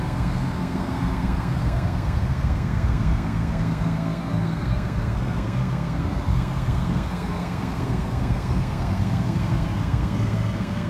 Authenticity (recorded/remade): remade